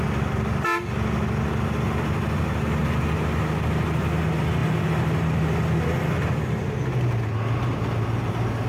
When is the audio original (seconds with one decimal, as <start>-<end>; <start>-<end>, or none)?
0.0-8.7